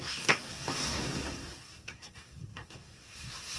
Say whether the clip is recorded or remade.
remade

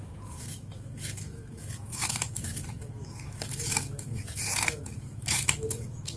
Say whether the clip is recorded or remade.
remade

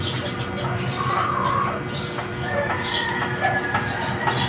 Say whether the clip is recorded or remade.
recorded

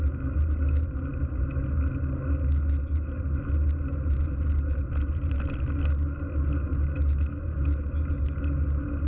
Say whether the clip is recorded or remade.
recorded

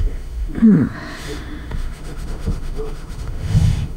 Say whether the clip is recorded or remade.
remade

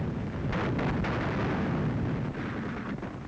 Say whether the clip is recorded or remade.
recorded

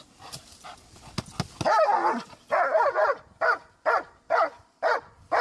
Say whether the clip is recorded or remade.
recorded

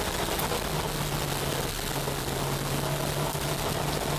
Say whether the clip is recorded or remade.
recorded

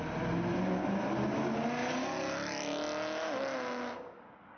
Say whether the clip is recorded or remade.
recorded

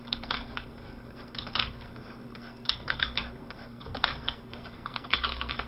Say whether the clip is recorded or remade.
remade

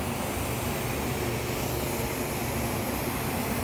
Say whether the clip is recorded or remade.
recorded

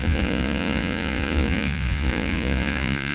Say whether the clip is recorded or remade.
remade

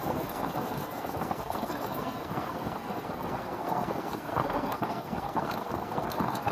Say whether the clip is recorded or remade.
remade